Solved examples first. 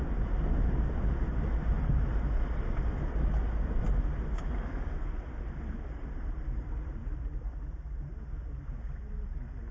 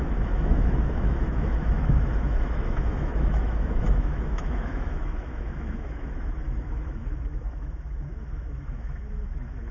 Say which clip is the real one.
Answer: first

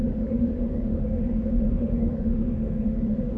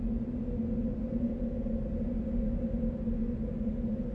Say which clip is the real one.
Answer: second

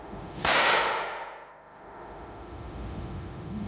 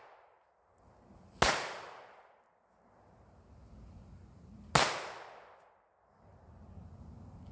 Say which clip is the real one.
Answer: second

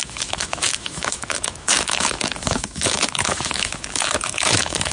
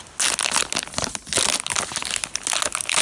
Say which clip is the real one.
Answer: second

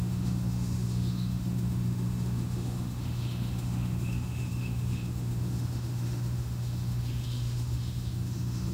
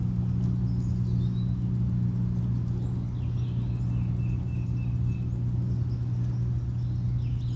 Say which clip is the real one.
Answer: second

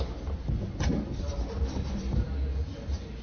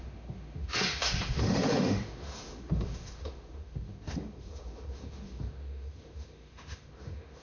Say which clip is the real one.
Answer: first